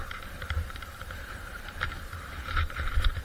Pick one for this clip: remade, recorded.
remade